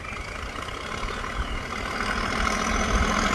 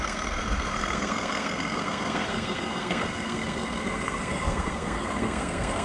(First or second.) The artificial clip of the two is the second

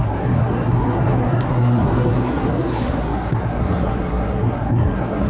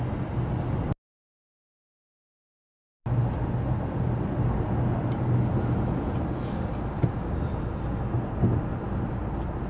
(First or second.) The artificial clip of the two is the first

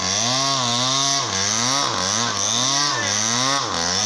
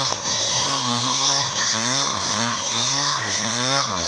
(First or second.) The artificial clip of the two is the second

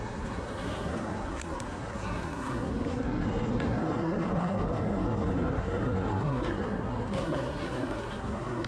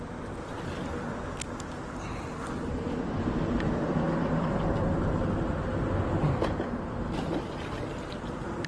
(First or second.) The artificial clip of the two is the first